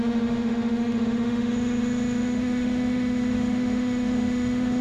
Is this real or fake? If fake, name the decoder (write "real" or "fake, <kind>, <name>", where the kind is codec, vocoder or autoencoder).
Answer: fake, autoencoder, DAC-VAE